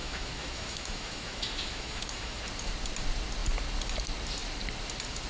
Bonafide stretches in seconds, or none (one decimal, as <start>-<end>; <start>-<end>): 2.4-5.3